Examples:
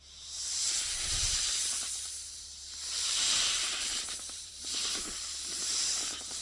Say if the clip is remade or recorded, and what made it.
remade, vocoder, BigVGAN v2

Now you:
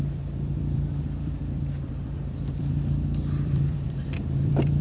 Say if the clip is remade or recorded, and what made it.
remade, vocoder, BigVGAN v2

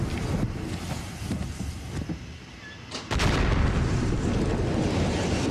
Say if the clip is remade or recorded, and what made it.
recorded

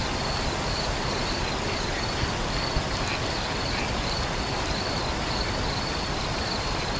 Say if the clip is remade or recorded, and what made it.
remade, vocoder, BigVGAN v2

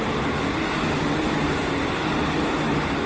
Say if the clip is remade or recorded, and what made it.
recorded